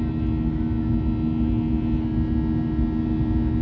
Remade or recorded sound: recorded